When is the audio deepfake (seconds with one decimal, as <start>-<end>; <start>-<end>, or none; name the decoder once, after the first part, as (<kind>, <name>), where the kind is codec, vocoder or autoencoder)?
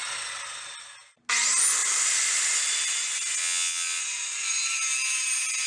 3.4-4.0 (vocoder, WaveNeXt)